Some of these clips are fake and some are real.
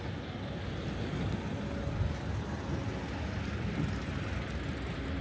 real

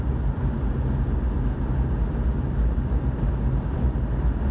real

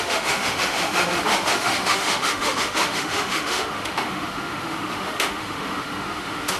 fake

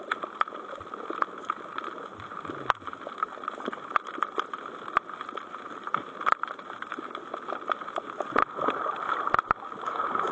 real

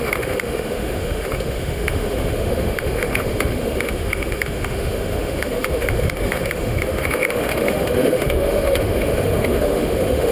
fake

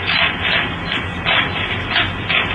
real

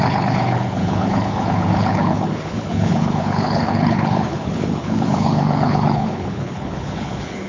fake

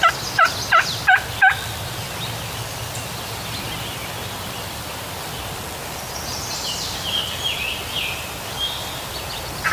real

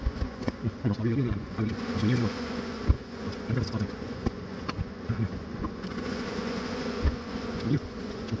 fake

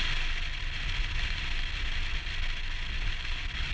real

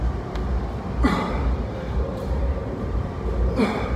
fake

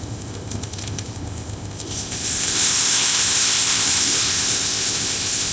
fake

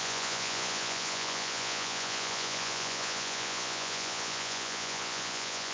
fake